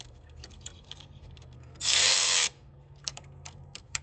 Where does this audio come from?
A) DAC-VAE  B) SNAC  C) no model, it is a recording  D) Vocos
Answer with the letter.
B